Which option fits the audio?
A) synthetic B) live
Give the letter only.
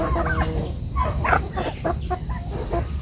B